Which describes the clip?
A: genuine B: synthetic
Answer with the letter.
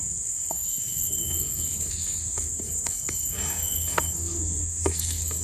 B